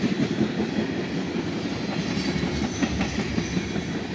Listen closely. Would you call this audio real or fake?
real